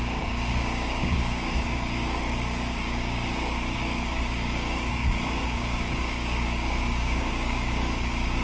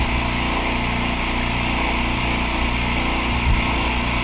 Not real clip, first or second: first